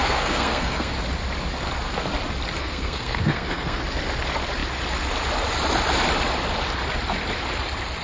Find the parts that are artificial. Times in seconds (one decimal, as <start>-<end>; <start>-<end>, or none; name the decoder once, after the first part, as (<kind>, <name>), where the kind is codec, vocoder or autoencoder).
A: 0.0-0.9 (codec, SNAC); 2.6-3.8